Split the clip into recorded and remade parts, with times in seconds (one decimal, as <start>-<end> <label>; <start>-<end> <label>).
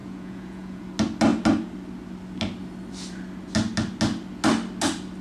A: 0.0-0.8 remade; 0.8-5.2 recorded